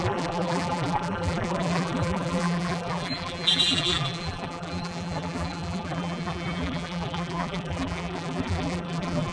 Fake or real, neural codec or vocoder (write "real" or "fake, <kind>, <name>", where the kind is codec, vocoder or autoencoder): fake, vocoder, BigVGAN v2